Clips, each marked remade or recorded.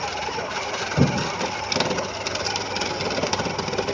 recorded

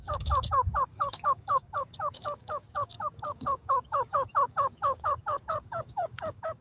remade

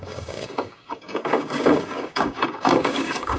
remade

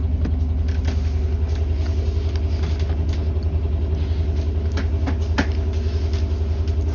recorded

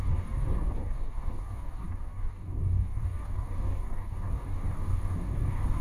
remade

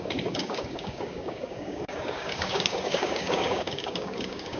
remade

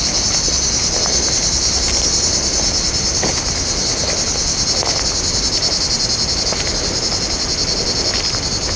recorded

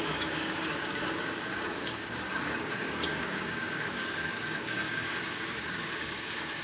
remade